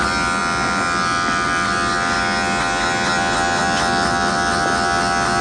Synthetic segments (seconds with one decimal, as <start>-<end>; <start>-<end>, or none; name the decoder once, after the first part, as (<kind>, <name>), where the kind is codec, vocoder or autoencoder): none